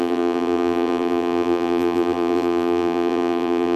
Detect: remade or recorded remade